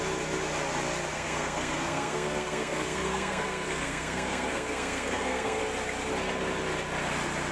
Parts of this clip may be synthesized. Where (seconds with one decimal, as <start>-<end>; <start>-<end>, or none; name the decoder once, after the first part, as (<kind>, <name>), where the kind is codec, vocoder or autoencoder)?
1.1-5.6 (codec, SNAC)